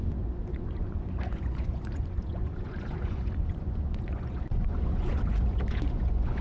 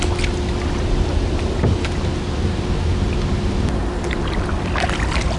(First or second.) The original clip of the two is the second